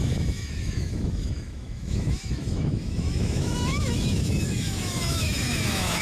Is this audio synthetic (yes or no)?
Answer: yes